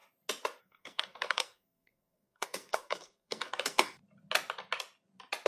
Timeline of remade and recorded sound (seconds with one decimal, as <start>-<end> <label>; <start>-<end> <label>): 0.0-0.6 recorded; 0.6-4.0 remade; 4.0-5.5 recorded